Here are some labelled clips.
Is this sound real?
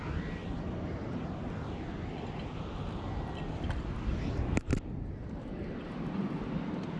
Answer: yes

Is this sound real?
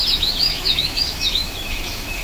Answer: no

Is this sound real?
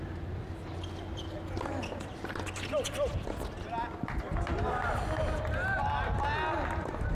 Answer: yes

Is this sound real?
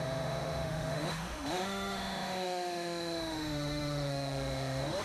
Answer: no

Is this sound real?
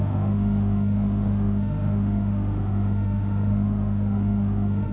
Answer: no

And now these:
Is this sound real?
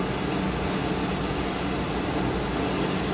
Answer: yes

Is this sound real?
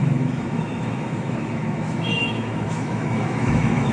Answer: no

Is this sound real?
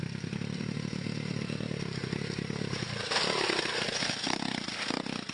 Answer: yes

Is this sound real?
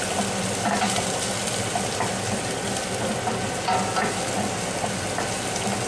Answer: yes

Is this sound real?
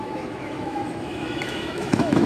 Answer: no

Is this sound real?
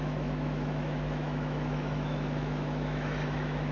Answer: no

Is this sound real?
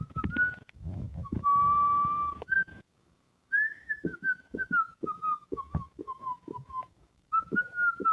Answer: no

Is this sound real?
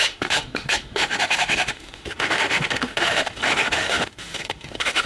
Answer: no